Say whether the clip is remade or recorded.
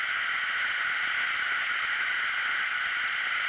recorded